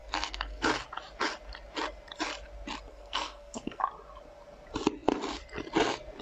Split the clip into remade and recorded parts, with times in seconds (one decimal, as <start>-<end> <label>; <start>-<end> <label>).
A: 0.0-0.7 remade; 0.7-2.9 recorded; 2.9-3.8 remade; 3.8-6.2 recorded